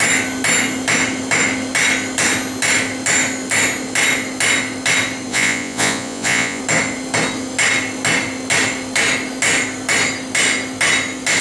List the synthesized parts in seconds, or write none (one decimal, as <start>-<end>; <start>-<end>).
5.3-6.6